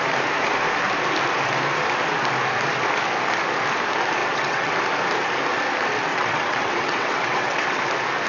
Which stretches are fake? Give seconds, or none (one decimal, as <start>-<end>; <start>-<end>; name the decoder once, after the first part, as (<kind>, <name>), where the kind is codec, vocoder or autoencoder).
4.2-4.7 (vocoder, WaveNeXt); 6.1-7.8